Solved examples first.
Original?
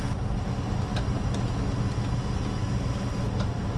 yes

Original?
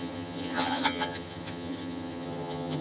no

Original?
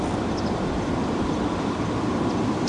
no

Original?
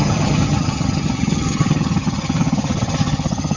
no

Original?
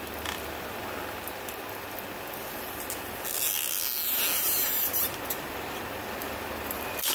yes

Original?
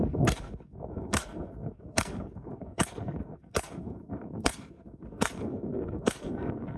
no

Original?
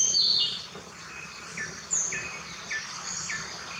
no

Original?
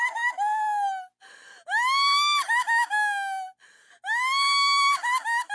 yes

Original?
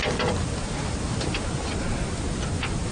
yes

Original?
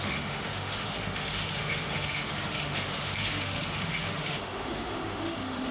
no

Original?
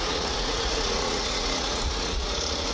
no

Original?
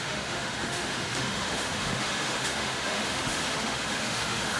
no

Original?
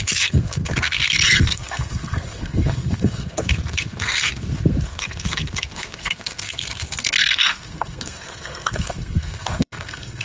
no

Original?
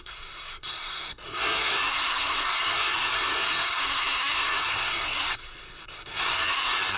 no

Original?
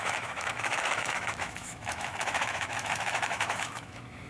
no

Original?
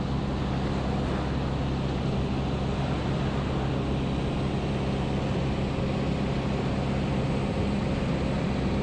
yes